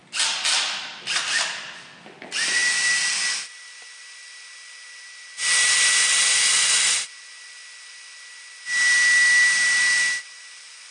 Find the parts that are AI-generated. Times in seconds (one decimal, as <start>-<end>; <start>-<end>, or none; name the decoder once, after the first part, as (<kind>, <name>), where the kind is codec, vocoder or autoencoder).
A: none